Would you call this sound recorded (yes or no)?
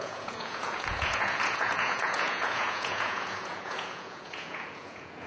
no